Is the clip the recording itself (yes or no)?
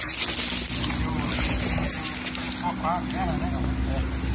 yes